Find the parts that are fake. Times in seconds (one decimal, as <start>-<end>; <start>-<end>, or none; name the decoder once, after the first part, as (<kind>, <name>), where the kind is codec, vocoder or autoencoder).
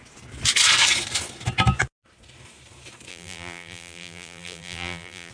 3.1-5.3 (vocoder, BigVGAN v2)